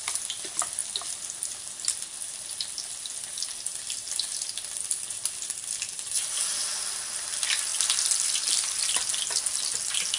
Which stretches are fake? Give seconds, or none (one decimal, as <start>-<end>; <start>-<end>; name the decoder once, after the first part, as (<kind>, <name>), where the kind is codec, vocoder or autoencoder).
none